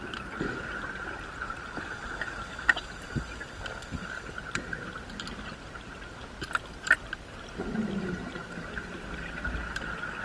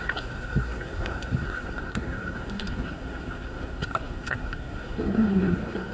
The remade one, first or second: second